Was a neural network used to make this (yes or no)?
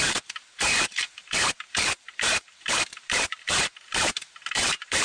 yes